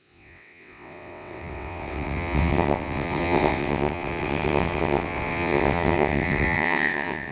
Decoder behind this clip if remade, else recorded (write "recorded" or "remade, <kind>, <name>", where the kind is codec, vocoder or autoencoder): remade, vocoder, WaveNeXt